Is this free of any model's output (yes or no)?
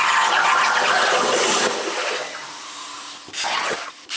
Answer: yes